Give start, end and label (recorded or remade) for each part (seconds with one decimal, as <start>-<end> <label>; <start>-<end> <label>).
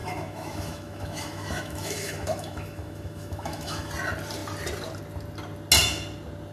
0.0-3.9 remade; 3.9-6.5 recorded